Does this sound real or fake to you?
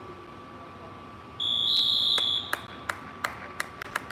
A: real